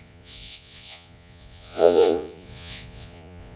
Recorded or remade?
remade